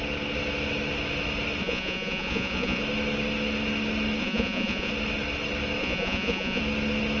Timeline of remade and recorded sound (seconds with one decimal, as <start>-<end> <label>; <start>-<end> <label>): 0.0-1.6 recorded; 1.6-2.8 remade; 2.8-4.2 recorded; 4.2-4.9 remade; 4.9-5.8 recorded; 5.8-6.6 remade; 6.6-7.2 recorded